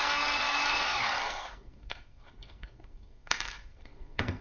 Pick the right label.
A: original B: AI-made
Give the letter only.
B